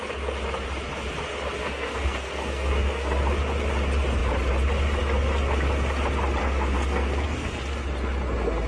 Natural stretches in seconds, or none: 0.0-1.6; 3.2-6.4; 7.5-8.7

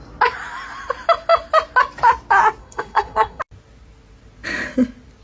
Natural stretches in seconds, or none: 0.0-2.6; 3.4-5.2

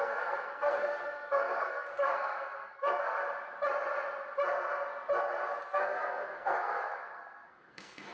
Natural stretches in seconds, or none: 3.2-5.6

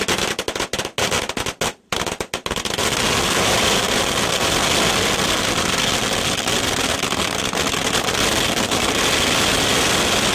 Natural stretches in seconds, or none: 0.0-10.3

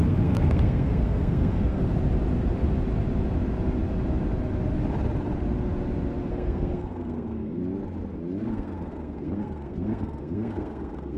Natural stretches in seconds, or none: 1.8-6.3; 7.6-8.5

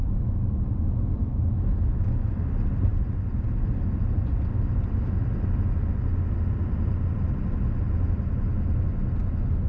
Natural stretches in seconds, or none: 0.0-9.7